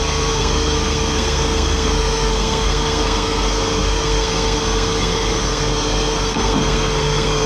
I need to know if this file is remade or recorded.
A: remade